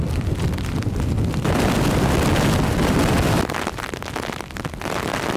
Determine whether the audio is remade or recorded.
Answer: recorded